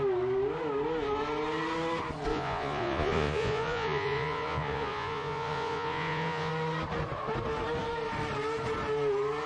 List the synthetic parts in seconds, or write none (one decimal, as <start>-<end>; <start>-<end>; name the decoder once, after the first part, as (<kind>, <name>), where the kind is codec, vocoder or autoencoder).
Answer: 2.3-6.5 (vocoder, Vocos)